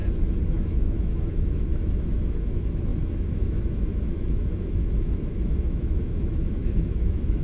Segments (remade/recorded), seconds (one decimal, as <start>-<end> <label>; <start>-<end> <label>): 0.0-0.5 recorded; 0.5-7.4 remade